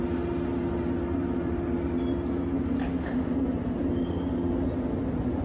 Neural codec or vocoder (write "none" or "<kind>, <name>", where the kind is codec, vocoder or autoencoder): none